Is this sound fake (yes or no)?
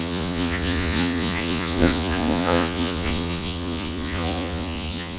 yes